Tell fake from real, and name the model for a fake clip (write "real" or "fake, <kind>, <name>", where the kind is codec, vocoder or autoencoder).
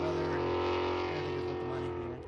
real